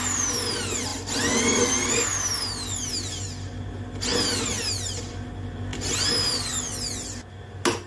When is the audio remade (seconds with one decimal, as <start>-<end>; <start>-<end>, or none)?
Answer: none